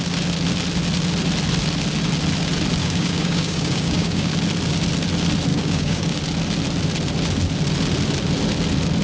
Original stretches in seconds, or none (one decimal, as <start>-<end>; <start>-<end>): 0.0-2.8; 4.3-5.5; 6.2-9.0